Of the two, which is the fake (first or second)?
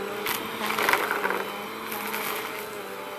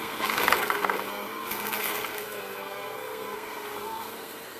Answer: second